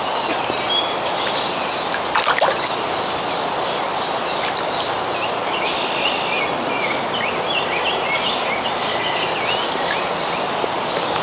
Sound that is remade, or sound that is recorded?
recorded